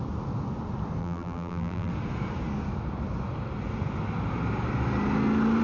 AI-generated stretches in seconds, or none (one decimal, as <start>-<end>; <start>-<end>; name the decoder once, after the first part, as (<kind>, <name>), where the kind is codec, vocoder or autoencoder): 1.0-1.9 (vocoder, BigVGAN v2)